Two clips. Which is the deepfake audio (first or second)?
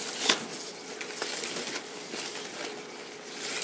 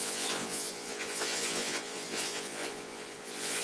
second